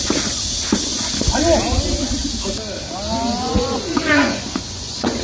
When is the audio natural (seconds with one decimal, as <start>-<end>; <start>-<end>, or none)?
0.0-0.9; 1.4-3.4